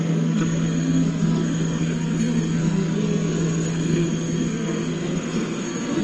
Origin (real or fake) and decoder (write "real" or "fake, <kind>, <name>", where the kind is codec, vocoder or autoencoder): fake, codec, SNAC